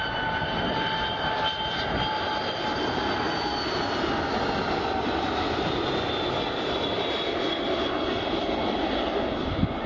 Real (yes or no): yes